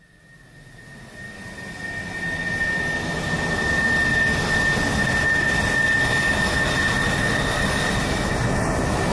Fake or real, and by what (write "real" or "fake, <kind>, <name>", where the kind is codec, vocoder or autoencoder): real